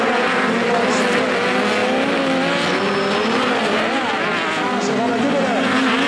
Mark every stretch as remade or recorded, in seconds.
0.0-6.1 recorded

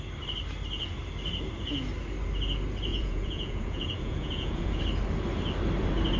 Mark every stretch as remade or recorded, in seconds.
0.0-2.9 recorded; 2.9-4.8 remade; 4.8-6.2 recorded